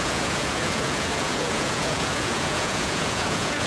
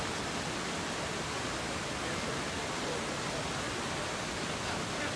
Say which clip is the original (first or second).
second